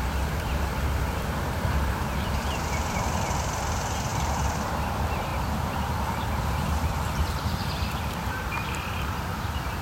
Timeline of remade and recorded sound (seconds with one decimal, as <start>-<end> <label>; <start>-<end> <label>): 0.0-9.8 remade